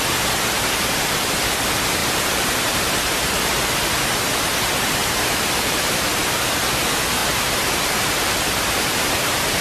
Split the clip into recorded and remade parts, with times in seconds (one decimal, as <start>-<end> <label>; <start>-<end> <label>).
0.0-2.0 recorded; 2.0-2.9 remade; 2.9-5.0 recorded; 5.0-6.0 remade; 6.0-7.2 recorded; 7.2-9.0 remade; 9.0-9.6 recorded